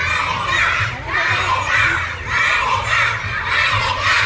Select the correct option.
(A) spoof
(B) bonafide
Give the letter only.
B